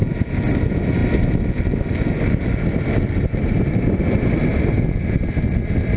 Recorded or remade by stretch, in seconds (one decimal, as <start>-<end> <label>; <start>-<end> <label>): 0.0-6.0 recorded